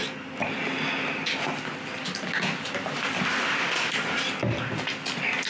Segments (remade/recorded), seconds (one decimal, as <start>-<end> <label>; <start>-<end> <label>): 0.0-5.5 recorded